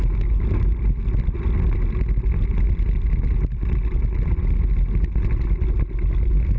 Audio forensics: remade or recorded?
recorded